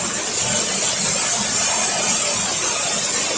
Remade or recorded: recorded